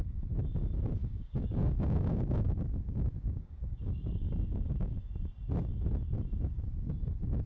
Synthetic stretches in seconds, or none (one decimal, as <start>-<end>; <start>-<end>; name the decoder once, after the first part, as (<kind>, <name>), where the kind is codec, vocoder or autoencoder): 1.0-5.1 (codec, DAC)